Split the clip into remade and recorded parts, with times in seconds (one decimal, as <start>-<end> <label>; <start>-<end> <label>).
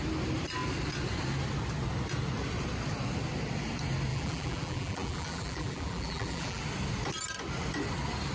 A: 0.0-4.1 recorded; 4.1-6.6 remade; 6.6-8.3 recorded